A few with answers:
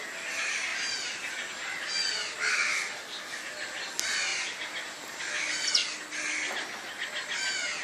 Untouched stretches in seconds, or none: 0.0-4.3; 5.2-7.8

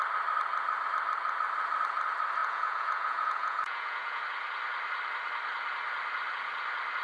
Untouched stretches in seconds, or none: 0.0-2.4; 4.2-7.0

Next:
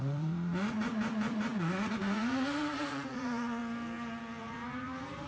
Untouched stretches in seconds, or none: 3.6-4.4